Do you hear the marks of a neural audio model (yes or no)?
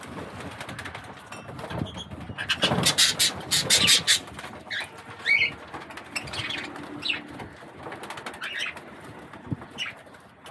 no